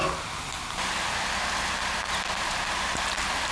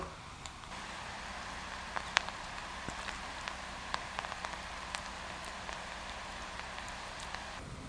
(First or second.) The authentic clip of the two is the first